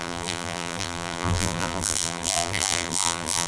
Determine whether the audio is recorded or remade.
remade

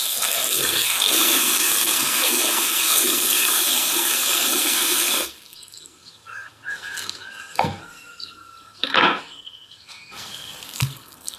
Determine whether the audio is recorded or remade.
remade